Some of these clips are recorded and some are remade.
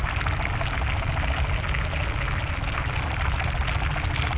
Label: recorded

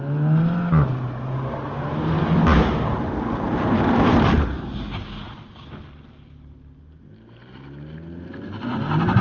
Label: recorded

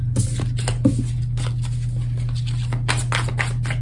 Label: recorded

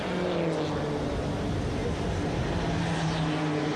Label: recorded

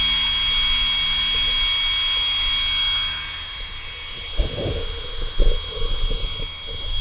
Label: recorded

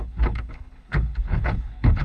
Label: remade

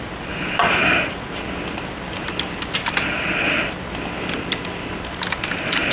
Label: recorded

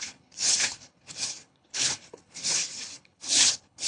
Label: remade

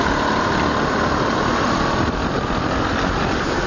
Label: recorded